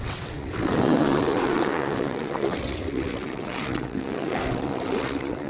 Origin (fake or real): fake